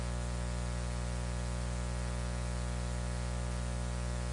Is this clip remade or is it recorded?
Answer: recorded